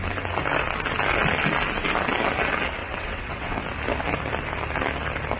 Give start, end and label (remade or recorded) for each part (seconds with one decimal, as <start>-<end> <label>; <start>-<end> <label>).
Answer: 0.0-2.8 recorded; 2.8-3.6 remade; 3.6-5.4 recorded